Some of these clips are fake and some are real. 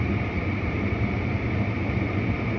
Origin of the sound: fake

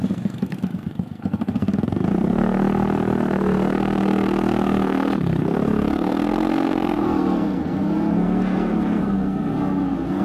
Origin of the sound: fake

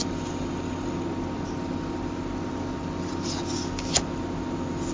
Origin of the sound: real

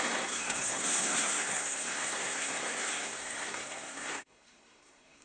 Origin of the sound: fake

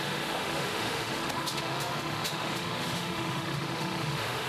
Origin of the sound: fake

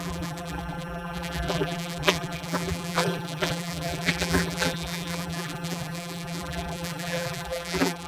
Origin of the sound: fake